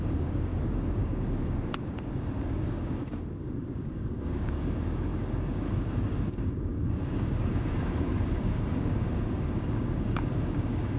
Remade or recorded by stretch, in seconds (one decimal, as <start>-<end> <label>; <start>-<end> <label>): 0.0-11.0 remade